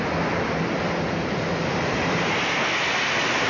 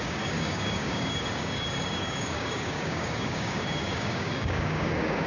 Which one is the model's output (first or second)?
second